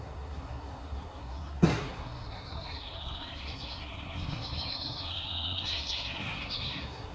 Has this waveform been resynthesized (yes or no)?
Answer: yes